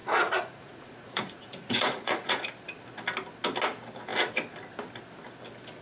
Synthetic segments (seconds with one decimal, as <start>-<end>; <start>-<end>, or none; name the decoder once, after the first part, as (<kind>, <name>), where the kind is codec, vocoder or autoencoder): 0.0-2.4 (vocoder, Vocos)